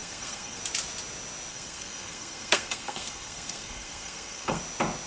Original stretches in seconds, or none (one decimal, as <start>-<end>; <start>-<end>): 0.6-1.5; 4.6-5.1